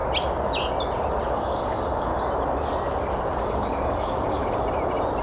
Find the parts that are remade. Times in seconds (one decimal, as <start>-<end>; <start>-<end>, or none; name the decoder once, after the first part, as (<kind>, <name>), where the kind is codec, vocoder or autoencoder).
1.3-2.1 (codec, DAC); 3.4-4.4